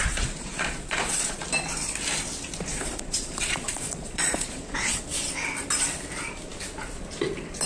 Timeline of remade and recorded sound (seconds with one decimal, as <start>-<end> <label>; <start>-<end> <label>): 0.0-1.4 remade; 1.4-2.7 recorded; 2.7-5.0 remade; 5.0-7.7 recorded